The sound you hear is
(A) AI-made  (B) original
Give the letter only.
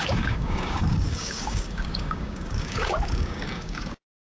A